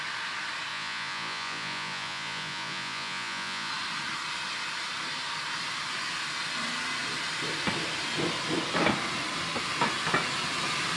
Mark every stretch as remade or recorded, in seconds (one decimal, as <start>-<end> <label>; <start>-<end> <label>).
0.0-0.7 recorded; 0.7-3.7 remade; 3.7-11.0 recorded